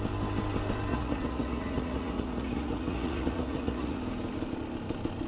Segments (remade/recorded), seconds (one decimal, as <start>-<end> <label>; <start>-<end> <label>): 0.0-0.9 recorded; 0.9-4.0 remade; 4.0-5.3 recorded